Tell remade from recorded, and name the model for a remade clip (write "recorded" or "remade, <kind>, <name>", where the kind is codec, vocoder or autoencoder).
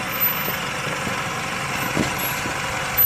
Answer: recorded